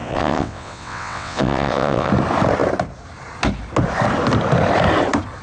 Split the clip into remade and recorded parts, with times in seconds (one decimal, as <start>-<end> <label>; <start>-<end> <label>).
0.0-2.1 remade; 2.1-5.4 recorded